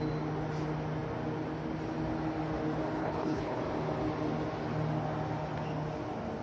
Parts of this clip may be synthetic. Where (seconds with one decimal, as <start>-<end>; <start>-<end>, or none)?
3.0-3.6